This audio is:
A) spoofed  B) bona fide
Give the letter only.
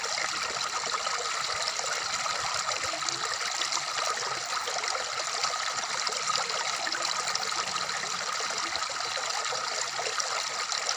B